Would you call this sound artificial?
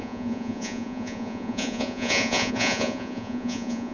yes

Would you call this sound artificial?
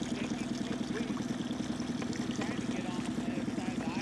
no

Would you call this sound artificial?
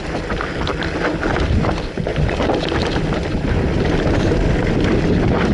no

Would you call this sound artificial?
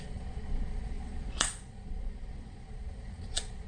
yes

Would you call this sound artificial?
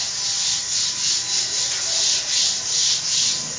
no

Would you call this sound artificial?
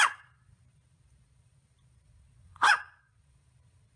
yes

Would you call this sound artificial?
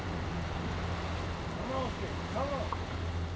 no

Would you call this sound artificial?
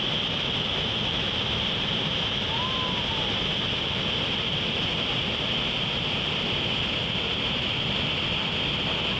no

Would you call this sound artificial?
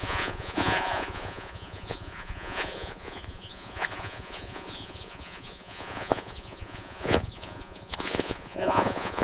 yes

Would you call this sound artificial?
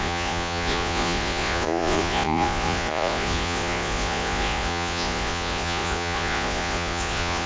yes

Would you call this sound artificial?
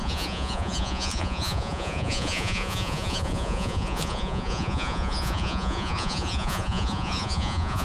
yes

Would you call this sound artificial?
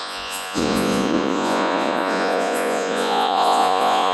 yes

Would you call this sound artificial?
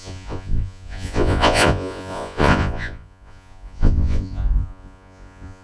yes